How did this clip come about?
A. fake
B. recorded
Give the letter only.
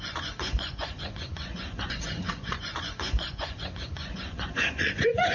A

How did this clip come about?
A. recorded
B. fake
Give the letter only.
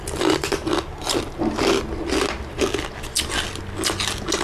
A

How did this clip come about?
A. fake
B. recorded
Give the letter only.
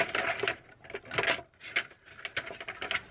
B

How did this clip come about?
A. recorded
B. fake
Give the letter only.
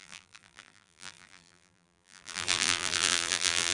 B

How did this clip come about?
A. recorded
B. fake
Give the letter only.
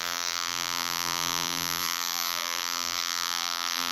B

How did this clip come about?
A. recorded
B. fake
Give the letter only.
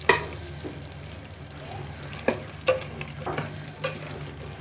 A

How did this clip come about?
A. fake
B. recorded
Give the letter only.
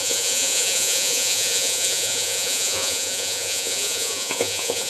A